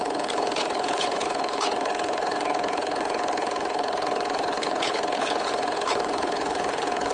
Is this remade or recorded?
remade